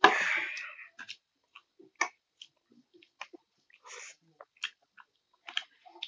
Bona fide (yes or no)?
yes